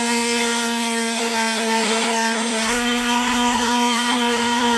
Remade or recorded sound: remade